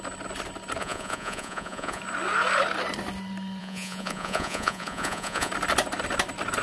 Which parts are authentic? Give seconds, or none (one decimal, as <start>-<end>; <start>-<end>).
0.0-0.8; 2.0-3.6; 5.5-6.6